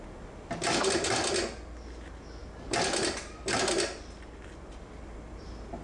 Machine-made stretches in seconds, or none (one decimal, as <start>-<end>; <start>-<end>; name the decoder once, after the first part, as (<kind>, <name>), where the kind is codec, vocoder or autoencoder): none